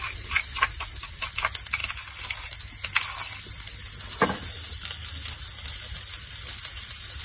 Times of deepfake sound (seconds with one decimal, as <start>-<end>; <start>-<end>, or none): none